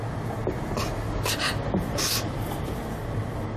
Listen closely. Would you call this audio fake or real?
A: real